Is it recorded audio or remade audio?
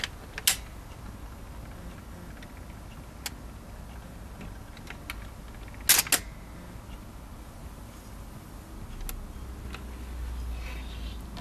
recorded